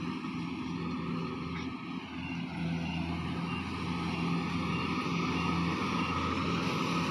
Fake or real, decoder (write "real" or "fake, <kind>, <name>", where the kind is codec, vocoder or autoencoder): real